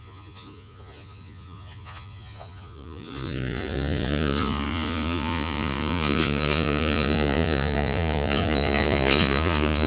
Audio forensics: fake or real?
fake